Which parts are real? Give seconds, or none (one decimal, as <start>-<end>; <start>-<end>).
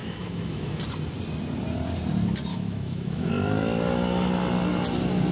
0.8-2.5; 3.3-5.3